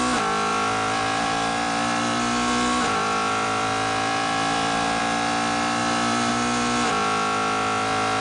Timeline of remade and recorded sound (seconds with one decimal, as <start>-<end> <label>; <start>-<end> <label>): 0.0-0.5 recorded; 0.5-5.0 remade; 5.0-5.8 recorded; 5.8-6.3 remade; 6.3-8.2 recorded